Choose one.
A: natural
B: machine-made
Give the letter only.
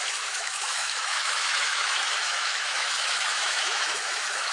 B